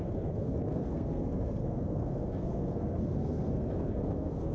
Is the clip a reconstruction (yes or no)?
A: yes